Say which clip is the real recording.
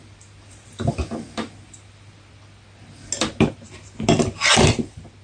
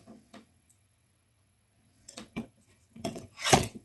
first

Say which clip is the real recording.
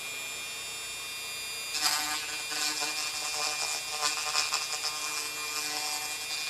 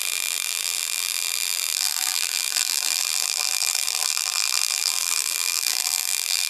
first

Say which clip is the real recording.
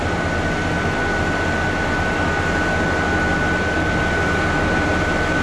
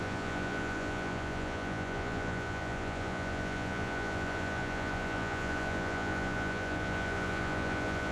first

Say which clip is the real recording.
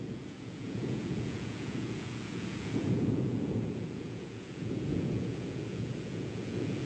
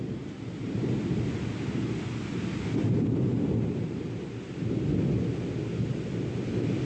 second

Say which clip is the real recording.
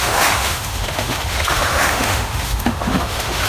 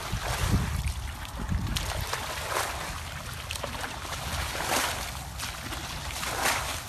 second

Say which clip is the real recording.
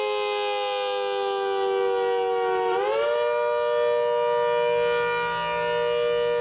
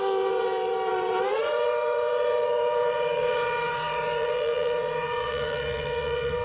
first